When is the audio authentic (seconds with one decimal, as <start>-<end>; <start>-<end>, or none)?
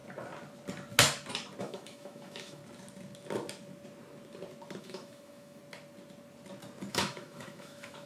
0.0-1.6; 2.6-4.8; 5.6-6.9